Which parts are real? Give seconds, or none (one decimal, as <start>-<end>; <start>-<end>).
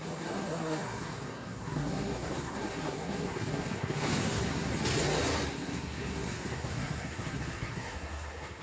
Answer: 4.7-5.5